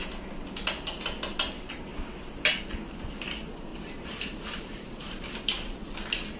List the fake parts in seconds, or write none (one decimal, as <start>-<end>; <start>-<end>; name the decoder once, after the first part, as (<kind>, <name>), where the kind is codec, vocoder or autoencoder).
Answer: 3.7-5.2 (vocoder, BigVGAN v2)